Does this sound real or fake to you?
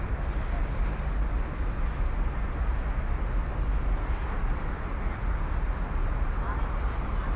real